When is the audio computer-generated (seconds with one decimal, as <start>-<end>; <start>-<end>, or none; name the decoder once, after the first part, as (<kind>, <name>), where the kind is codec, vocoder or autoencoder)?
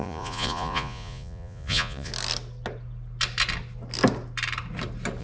0.0-2.1 (vocoder, Vocos)